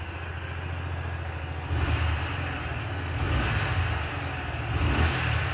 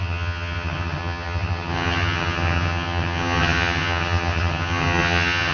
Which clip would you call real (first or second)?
first